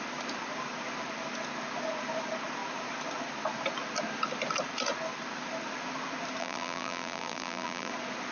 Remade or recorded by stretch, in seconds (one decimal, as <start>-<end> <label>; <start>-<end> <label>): 0.0-6.4 recorded; 6.4-7.9 remade; 7.9-8.3 recorded